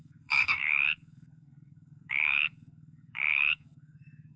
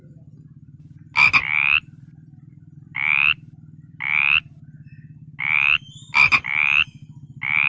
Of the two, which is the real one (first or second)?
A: second